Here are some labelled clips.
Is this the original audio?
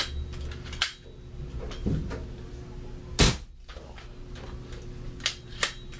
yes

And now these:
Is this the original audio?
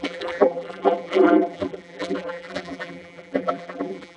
no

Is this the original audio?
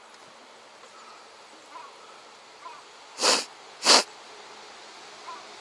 yes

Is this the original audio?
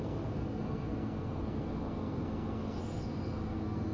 no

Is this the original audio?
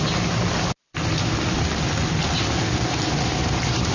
no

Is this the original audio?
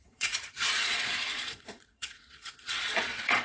no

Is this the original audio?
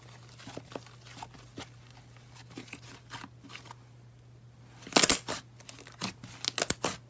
yes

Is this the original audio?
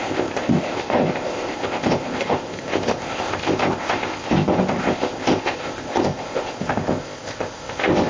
no